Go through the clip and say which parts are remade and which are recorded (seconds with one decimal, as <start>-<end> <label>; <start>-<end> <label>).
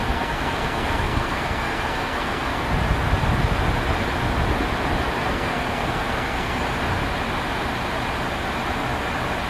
0.0-2.6 remade; 2.6-5.2 recorded; 5.2-6.6 remade; 6.6-9.5 recorded